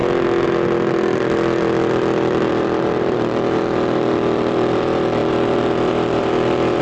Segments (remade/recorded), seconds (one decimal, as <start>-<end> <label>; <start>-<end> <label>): 0.0-2.5 recorded; 2.5-6.8 remade